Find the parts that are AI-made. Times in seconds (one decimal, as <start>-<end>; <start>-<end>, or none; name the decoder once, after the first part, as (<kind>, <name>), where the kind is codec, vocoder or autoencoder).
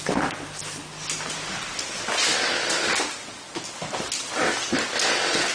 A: none